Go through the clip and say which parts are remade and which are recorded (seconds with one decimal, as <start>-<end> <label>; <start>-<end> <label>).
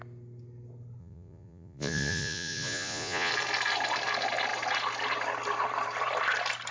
0.0-1.0 recorded; 1.0-3.3 remade; 3.3-6.7 recorded